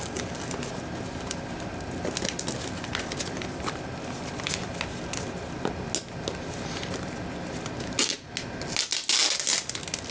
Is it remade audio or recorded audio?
recorded